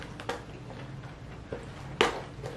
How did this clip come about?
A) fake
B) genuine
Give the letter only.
B